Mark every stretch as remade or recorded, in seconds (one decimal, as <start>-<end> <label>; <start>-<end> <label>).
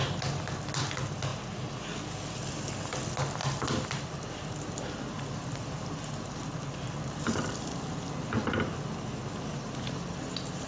0.0-3.4 recorded; 3.4-7.8 remade; 7.8-10.7 recorded